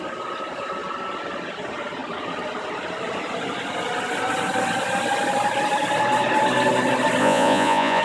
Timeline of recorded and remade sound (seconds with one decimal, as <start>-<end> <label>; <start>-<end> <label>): 0.0-7.2 recorded; 7.2-8.0 remade